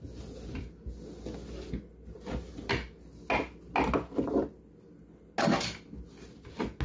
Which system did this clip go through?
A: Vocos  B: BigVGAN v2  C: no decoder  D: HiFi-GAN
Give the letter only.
C